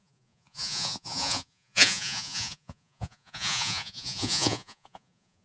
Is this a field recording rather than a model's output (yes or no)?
no